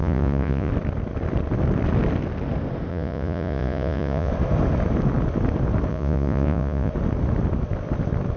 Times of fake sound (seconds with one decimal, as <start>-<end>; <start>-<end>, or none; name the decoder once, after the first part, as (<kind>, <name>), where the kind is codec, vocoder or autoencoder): 0.0-0.7 (vocoder, Vocos); 2.9-4.3; 5.9-6.9